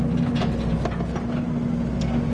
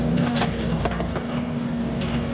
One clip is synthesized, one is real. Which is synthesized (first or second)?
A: second